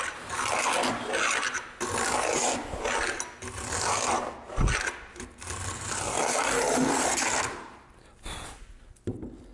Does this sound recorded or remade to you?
recorded